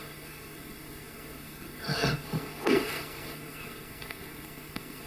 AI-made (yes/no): yes